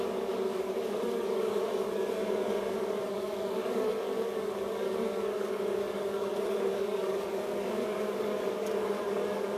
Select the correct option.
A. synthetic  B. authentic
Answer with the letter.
A